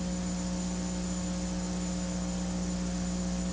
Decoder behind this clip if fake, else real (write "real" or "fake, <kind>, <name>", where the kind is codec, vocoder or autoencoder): real